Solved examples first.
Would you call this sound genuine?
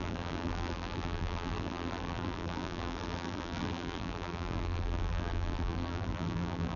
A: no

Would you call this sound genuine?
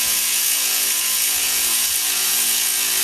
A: no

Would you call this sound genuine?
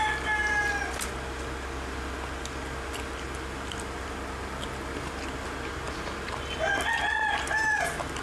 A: yes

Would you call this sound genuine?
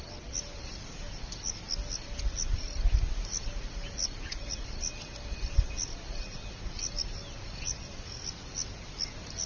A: yes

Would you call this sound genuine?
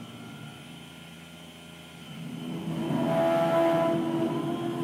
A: yes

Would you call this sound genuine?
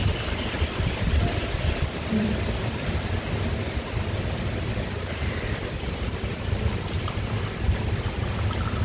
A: yes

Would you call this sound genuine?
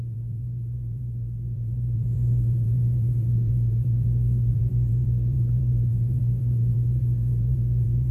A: no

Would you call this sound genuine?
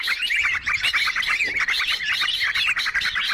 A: yes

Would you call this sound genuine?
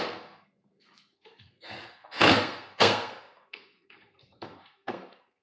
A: no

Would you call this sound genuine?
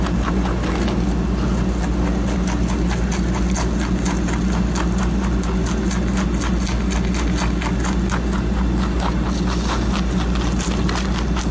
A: yes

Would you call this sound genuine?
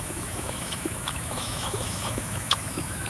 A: no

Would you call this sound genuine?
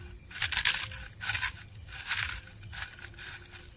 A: yes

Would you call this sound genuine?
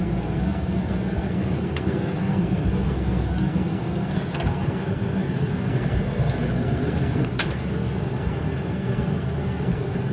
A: no